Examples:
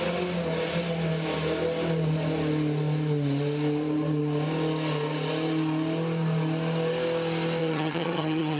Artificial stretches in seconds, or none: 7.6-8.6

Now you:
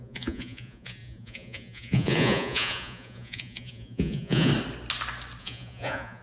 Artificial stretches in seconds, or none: 0.0-4.5; 5.4-6.2

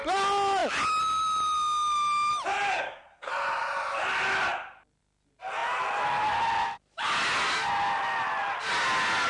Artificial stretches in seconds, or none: 2.7-3.3

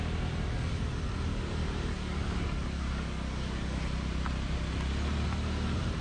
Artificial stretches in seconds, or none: 1.5-3.8

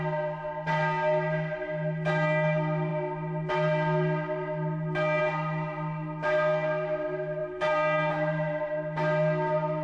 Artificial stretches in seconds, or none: none

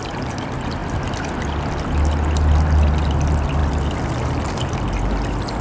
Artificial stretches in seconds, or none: none

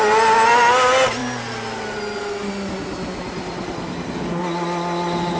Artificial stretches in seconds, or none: none

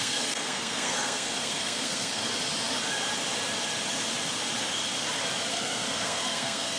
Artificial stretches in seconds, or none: 0.0-2.2; 5.5-6.8